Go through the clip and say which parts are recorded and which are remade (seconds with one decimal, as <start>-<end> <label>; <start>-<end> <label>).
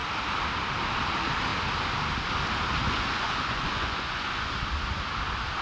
0.0-2.8 recorded; 2.8-4.5 remade; 4.5-5.6 recorded